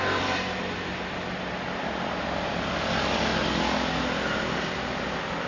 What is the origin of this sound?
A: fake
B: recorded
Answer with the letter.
B